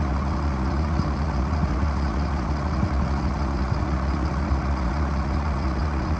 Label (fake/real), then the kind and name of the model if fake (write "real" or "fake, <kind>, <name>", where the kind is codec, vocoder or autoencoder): fake, vocoder, Vocos